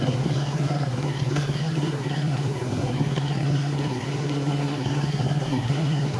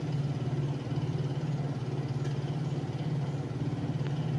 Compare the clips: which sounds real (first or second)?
second